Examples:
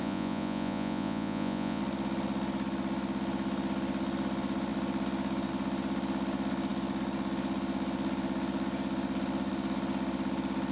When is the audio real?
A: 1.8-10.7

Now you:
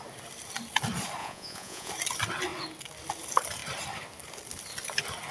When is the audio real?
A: 0.0-1.2; 1.9-5.3

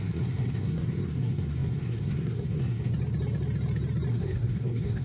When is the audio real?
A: 2.9-4.1

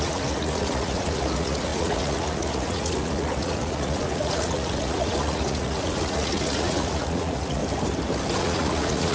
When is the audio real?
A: 7.6-8.4

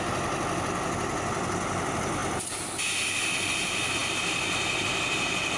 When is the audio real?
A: 0.0-5.6

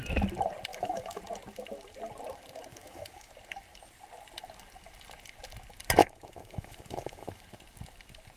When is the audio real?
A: 0.0-0.7; 1.2-2.7; 3.3-6.0; 7.4-8.4

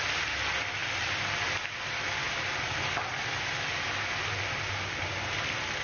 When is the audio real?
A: 0.0-5.8